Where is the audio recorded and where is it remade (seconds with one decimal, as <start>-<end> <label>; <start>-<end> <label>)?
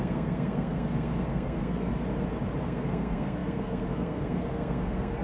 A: 0.0-1.9 remade; 1.9-2.6 recorded; 2.6-5.2 remade